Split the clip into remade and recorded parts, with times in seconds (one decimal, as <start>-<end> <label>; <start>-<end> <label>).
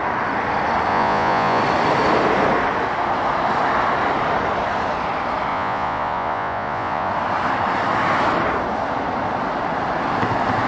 0.0-0.9 recorded; 0.9-1.6 remade; 1.6-5.5 recorded; 5.5-7.1 remade; 7.1-10.7 recorded